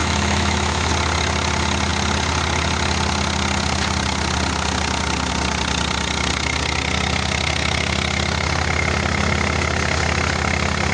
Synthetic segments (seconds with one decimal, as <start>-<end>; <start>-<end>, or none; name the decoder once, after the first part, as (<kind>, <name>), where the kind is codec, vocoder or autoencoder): 0.0-0.9 (autoencoder, DAC-VAE)